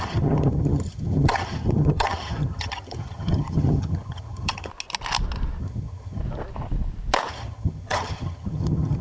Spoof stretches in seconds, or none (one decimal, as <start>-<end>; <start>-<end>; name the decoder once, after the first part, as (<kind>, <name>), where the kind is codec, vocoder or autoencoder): 0.0-4.7 (vocoder, HiFi-GAN); 5.6-6.2; 7.3-9.0